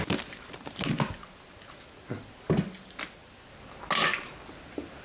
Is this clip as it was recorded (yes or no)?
yes